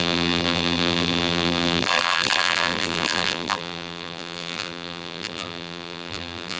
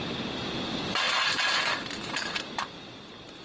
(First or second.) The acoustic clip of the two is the second